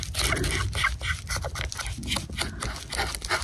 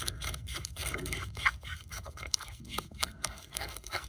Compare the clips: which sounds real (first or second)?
first